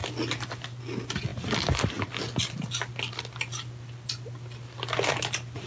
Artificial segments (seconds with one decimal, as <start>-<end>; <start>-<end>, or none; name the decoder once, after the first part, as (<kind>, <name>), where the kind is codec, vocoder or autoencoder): none

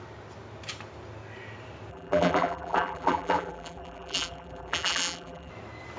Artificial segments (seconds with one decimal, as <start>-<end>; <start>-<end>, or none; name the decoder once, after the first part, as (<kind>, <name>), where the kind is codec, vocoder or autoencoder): 1.9-5.5 (vocoder, BigVGAN v2)

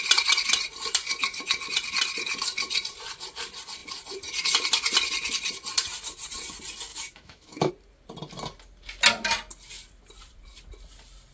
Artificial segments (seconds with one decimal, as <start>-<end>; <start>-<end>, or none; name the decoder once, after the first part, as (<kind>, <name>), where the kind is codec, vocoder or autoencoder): 6.9-7.7 (autoencoder, DAC-VAE)

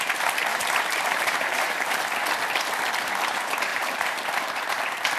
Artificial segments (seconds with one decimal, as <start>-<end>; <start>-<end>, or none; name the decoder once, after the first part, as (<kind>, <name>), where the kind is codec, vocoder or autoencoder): 0.5-1.9 (vocoder, BigVGAN v2); 3.7-4.2

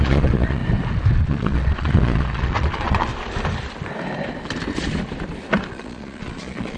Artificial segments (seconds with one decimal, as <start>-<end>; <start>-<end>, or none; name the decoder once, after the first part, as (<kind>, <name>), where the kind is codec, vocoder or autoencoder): 0.0-0.6 (vocoder, Vocos); 1.2-3.1; 5.7-6.8

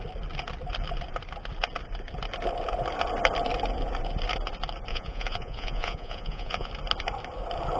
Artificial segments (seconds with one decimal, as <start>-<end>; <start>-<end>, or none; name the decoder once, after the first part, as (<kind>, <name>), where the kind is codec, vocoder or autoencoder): 4.9-6.7 (vocoder, Vocos)

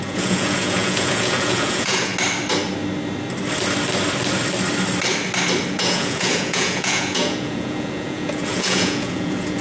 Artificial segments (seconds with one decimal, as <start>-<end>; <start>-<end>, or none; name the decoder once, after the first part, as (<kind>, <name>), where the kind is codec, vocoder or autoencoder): 0.0-2.1 (vocoder, Vocos); 5.7-9.6